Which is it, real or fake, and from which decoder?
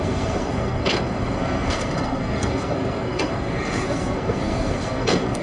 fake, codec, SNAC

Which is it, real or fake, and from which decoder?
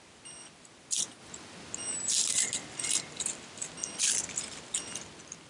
real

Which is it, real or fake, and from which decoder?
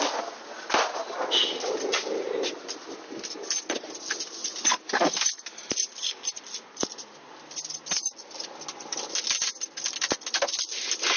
real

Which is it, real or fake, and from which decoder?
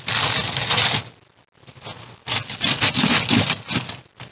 real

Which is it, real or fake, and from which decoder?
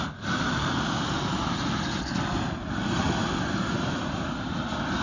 real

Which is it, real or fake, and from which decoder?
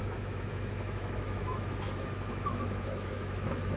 fake, autoencoder, DAC-VAE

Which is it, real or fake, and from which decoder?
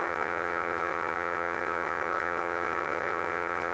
fake, vocoder, HiFi-GAN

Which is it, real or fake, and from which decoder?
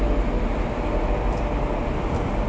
real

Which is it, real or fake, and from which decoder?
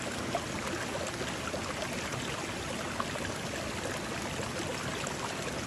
real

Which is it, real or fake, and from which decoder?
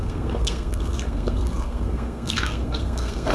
fake, codec, SNAC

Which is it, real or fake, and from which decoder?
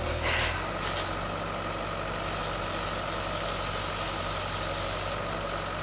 real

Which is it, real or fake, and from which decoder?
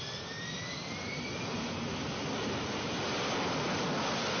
real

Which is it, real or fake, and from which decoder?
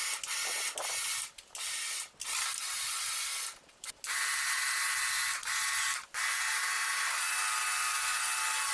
real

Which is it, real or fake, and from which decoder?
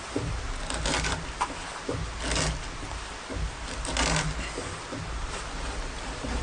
real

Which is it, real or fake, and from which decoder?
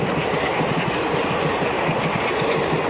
real